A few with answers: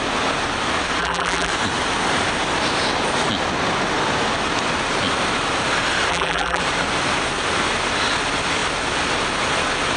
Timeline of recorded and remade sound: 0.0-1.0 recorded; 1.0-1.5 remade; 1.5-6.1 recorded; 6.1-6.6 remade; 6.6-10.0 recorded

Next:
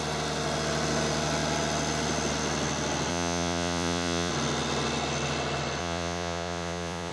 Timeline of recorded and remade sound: 0.0-3.1 recorded; 3.1-4.3 remade; 4.3-5.8 recorded; 5.8-7.1 remade

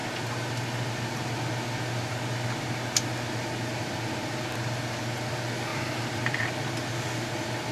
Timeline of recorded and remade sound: 0.0-5.7 recorded; 5.7-6.5 remade; 6.5-7.7 recorded

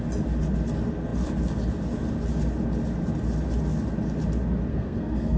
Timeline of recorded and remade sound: 0.0-4.7 recorded; 4.7-5.4 remade

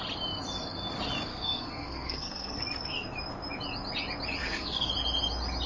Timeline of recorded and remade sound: 0.0-1.3 recorded; 1.3-2.6 remade; 2.6-4.4 recorded; 4.4-4.9 remade; 4.9-5.7 recorded

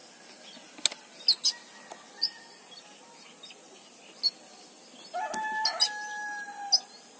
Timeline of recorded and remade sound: 0.0-7.2 recorded

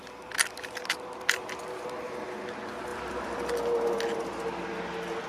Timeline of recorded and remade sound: 0.0-2.9 recorded; 2.9-3.5 remade; 3.5-5.3 recorded